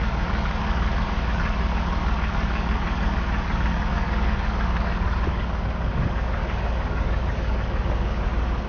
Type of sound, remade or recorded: remade